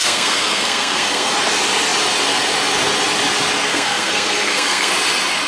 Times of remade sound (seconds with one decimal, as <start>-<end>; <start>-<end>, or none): 0.0-1.3; 3.7-4.9